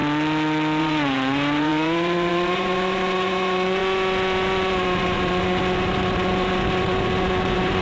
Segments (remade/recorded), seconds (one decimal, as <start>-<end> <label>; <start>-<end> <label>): 0.0-0.8 recorded; 0.8-7.8 remade